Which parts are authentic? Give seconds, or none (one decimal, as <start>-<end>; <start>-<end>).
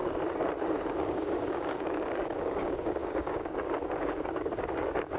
0.0-0.6